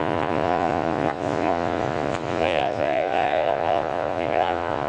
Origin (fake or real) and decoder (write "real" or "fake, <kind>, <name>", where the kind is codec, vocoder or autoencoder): fake, vocoder, Vocos